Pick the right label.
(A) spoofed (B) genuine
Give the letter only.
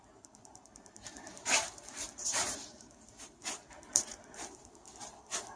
A